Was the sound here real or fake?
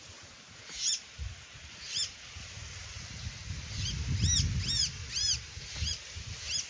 real